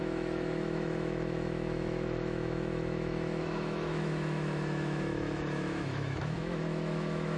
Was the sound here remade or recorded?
remade